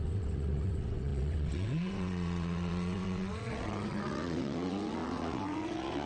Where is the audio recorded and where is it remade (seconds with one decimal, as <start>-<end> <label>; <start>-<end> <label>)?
0.0-6.1 remade